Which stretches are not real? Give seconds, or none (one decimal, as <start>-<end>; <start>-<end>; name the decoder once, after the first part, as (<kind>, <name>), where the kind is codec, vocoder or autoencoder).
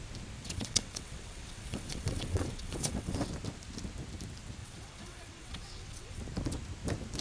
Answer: 0.4-3.3 (vocoder, WaveNeXt); 4.6-6.2